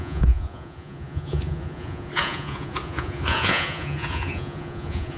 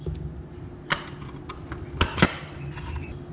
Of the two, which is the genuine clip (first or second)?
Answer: second